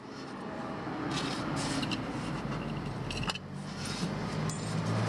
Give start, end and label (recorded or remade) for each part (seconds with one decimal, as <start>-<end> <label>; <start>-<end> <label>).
0.0-0.6 remade; 0.6-3.7 recorded; 3.7-5.1 remade